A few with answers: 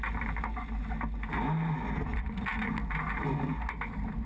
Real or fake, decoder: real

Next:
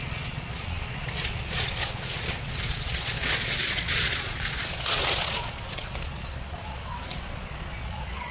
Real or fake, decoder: fake, vocoder, Vocos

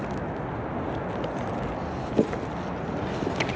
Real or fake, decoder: real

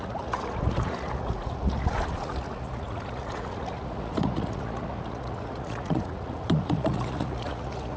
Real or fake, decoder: fake, vocoder, Vocos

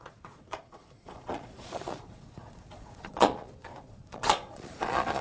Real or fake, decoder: fake, vocoder, Vocos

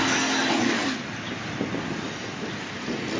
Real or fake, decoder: real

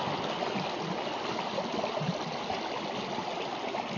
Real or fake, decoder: real